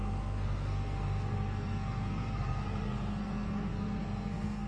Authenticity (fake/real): fake